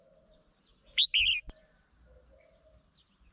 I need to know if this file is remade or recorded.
recorded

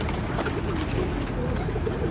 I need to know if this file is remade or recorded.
recorded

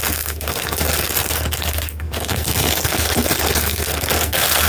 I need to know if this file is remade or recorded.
remade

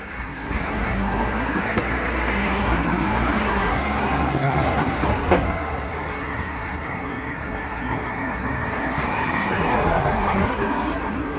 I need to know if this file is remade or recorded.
remade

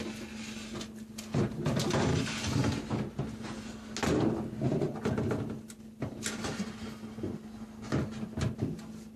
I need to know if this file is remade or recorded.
recorded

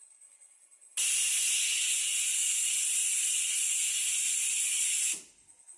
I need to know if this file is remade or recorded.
recorded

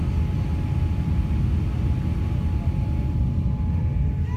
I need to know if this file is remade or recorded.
recorded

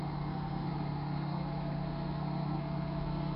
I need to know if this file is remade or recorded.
remade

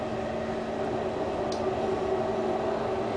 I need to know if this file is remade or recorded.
recorded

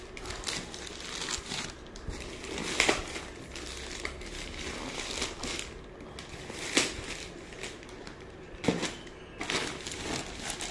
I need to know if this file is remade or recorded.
recorded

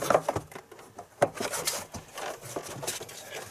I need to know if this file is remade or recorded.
recorded